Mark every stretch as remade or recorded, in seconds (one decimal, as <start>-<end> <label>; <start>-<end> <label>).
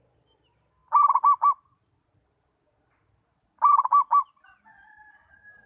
0.0-5.7 recorded